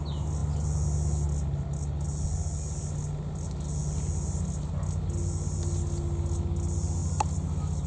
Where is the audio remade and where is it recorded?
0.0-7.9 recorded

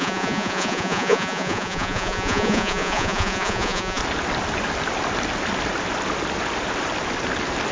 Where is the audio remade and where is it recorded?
0.0-4.0 remade; 4.0-7.7 recorded